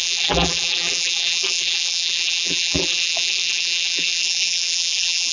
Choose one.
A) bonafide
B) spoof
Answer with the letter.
B